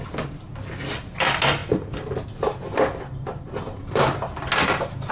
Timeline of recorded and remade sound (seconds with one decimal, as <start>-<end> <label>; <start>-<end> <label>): 0.0-5.1 recorded